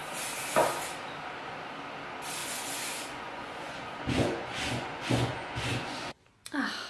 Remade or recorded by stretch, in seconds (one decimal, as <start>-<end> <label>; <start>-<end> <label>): 0.0-2.4 recorded; 2.4-6.5 remade; 6.5-6.9 recorded